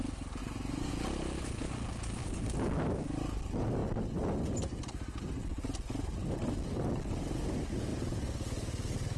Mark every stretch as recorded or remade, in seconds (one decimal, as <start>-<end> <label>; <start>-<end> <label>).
0.0-0.4 recorded; 0.4-0.9 remade; 0.9-9.2 recorded

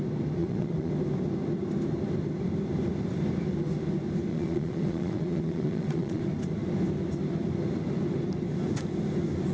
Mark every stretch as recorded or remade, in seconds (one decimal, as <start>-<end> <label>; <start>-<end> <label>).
0.0-0.4 recorded; 0.4-0.9 remade; 0.9-4.3 recorded; 4.3-6.2 remade; 6.2-9.5 recorded

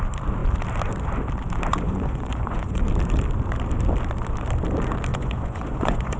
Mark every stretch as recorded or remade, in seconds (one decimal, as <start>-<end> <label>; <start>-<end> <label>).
0.0-1.7 recorded; 1.7-2.8 remade; 2.8-5.1 recorded; 5.1-6.2 remade

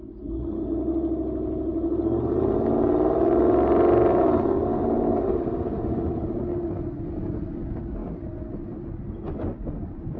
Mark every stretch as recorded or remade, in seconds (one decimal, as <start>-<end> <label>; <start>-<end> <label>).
0.0-10.2 recorded